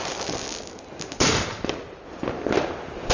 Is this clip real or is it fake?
real